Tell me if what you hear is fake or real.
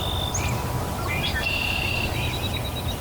real